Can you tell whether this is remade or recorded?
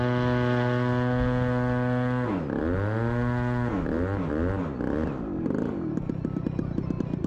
recorded